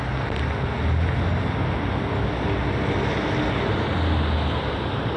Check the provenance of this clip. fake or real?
real